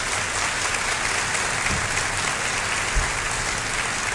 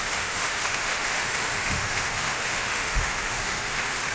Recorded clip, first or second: first